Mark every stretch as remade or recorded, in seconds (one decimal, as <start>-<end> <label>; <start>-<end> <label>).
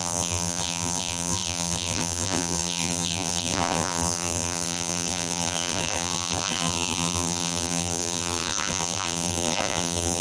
0.0-10.2 remade